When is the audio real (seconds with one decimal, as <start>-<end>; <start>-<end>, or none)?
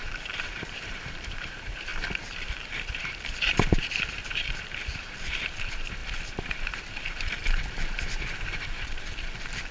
1.9-2.4